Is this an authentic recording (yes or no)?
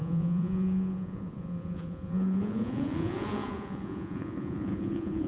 no